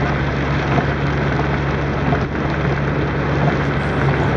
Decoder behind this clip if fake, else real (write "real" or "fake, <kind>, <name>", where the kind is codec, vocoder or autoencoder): real